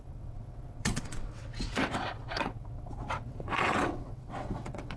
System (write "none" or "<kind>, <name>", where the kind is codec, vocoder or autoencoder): vocoder, WaveNeXt